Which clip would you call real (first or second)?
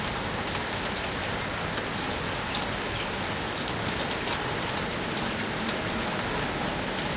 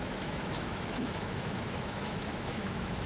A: first